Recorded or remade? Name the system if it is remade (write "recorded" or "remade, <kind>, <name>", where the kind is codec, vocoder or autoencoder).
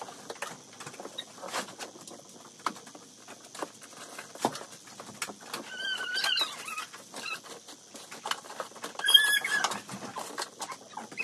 recorded